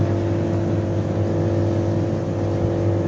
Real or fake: real